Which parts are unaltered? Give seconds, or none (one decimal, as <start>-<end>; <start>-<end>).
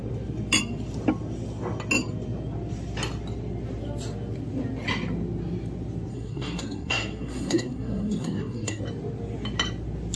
0.0-6.1; 8.8-10.2